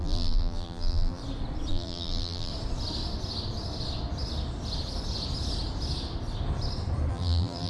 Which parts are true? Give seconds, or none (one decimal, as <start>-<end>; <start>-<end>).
1.2-1.7; 2.5-7.1